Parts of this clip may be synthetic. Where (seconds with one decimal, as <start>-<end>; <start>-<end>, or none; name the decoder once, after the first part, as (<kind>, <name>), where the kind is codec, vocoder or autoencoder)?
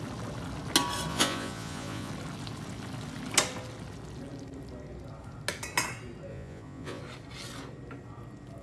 1.1-2.1 (vocoder, Vocos); 6.3-7.0